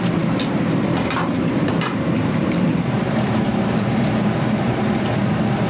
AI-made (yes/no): yes